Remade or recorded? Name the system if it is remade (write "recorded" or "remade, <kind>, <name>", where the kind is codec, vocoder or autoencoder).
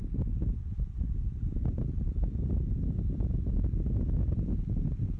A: recorded